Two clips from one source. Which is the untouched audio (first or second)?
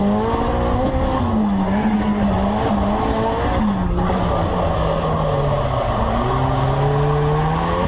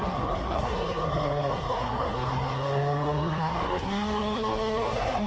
first